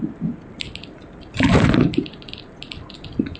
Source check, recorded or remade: recorded